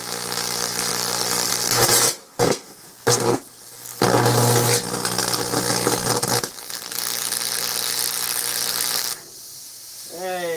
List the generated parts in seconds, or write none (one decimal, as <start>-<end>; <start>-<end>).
2.2-3.4